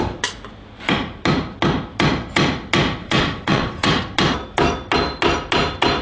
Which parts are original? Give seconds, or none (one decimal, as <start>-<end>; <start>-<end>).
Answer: 0.0-3.0; 4.0-6.0